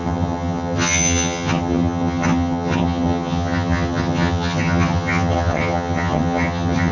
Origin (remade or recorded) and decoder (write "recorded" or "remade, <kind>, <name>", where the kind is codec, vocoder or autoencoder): remade, vocoder, HiFi-GAN